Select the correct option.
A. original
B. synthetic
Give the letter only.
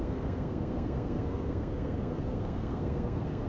B